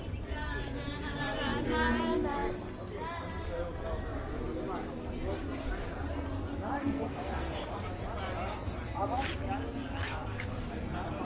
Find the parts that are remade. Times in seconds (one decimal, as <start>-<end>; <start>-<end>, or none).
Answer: 6.8-7.7